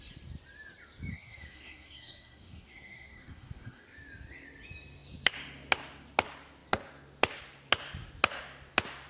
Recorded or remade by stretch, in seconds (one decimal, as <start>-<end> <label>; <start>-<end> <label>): 0.0-1.1 recorded; 1.1-3.8 remade; 3.8-9.1 recorded